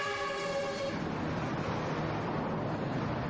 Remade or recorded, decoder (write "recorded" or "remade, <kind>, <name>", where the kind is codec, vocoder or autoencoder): recorded